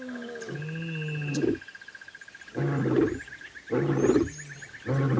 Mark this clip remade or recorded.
recorded